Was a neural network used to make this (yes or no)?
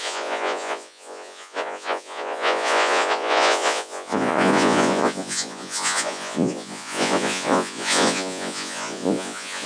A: yes